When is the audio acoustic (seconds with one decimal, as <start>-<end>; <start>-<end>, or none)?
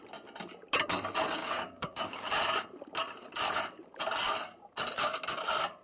0.0-1.4; 2.3-5.8